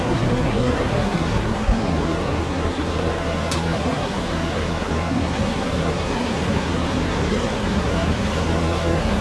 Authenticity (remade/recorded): remade